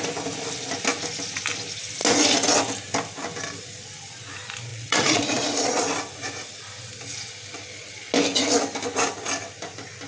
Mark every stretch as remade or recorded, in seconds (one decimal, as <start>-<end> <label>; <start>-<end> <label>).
0.0-4.7 recorded; 4.7-5.8 remade; 5.8-10.1 recorded